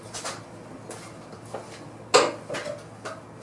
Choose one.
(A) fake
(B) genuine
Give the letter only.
B